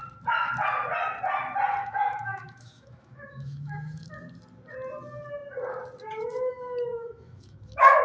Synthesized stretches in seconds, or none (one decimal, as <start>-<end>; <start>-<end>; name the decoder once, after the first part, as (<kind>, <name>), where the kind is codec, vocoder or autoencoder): 1.8-4.1 (autoencoder, DAC-VAE); 6.9-8.0